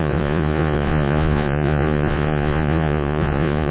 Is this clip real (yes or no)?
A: no